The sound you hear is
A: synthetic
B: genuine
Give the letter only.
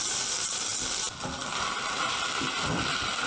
B